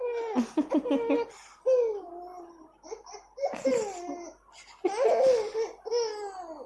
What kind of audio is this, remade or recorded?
recorded